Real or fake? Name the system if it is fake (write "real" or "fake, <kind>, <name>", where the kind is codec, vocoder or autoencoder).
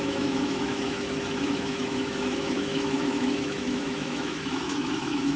fake, autoencoder, DAC-VAE